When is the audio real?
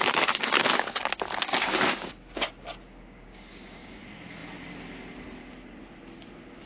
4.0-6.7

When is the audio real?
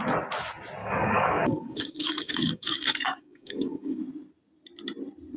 0.0-0.8; 4.0-5.4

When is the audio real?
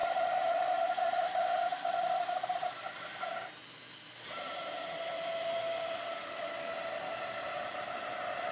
0.0-6.1; 6.7-8.5